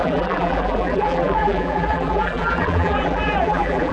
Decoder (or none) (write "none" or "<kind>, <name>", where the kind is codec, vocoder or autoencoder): vocoder, BigVGAN v2